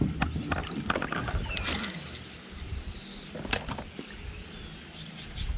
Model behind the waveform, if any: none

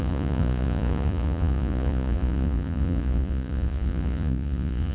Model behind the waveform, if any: vocoder, Vocos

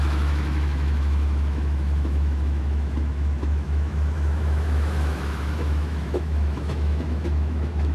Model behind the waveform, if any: autoencoder, DAC-VAE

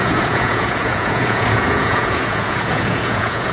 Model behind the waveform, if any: vocoder, Vocos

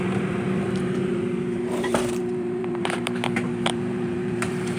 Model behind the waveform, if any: vocoder, BigVGAN v2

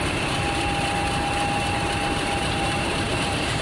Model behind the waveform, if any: vocoder, BigVGAN v2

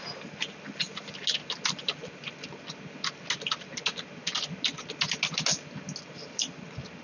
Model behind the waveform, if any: none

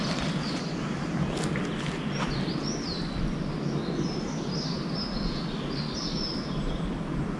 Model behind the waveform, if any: none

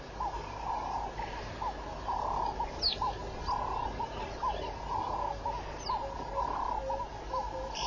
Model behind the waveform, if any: none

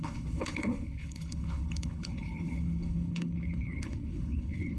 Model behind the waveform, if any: codec, HILCodec